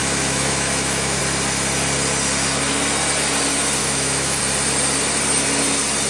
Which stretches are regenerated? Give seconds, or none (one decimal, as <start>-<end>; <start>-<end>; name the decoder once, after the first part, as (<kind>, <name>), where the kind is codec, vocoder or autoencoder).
0.0-1.2 (autoencoder, DAC-VAE); 3.8-4.4